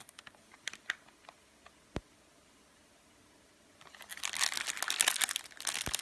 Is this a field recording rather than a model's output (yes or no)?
yes